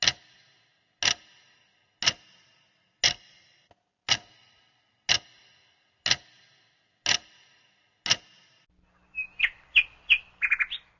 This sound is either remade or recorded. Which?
recorded